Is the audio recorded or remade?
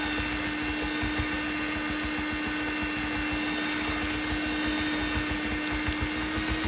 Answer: recorded